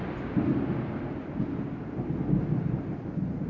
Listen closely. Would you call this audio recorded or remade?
recorded